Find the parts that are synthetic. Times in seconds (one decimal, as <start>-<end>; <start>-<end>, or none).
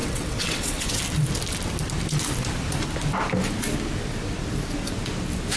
0.0-1.0